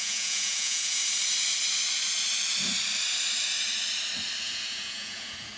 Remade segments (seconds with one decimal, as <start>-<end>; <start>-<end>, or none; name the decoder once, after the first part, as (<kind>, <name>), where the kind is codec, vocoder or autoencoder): 0.0-1.0 (vocoder, Vocos); 4.4-5.6